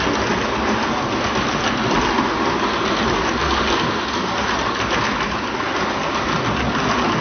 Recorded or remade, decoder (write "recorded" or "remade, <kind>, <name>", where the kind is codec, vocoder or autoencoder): recorded